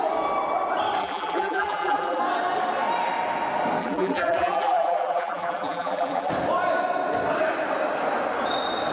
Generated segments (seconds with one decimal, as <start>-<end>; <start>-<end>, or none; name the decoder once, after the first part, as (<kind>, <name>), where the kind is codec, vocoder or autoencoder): 1.0-2.2 (vocoder, BigVGAN v2); 3.8-6.3